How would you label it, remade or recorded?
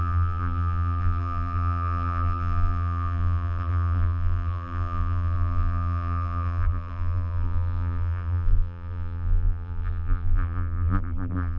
remade